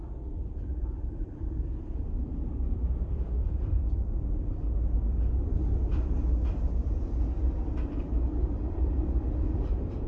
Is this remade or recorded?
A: remade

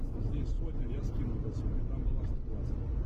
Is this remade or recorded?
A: recorded